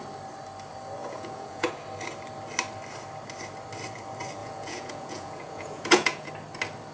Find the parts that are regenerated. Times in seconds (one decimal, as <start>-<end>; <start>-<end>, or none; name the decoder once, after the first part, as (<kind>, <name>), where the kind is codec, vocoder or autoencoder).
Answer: 1.0-1.7 (vocoder, Vocos); 4.4-6.3